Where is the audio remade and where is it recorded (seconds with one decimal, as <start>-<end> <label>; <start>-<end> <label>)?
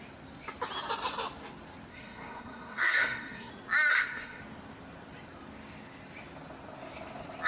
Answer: 0.0-1.9 recorded; 1.9-3.5 remade; 3.5-3.9 recorded; 3.9-4.4 remade; 4.4-7.5 recorded